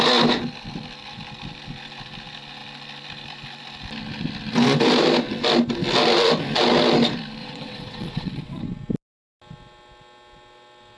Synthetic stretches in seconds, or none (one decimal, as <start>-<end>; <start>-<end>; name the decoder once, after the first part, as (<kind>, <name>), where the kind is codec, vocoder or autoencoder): 7.4-8.6 (vocoder, WaveNeXt)